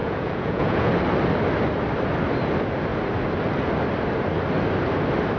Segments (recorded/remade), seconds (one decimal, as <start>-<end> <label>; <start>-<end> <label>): 0.0-0.9 remade; 0.9-5.4 recorded